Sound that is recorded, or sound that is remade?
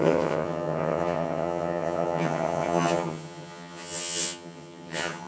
remade